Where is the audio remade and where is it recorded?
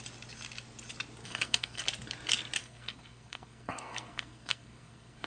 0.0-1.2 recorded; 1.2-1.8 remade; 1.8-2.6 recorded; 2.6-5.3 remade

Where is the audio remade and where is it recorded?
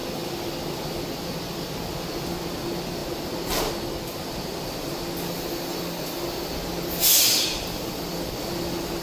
0.0-9.0 recorded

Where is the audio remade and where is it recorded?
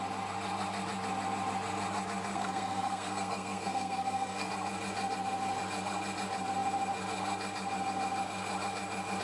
0.0-2.3 recorded; 2.3-4.5 remade; 4.5-9.2 recorded